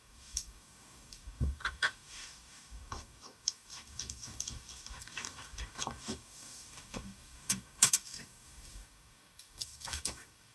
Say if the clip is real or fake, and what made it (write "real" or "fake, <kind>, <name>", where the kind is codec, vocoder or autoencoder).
fake, codec, DAC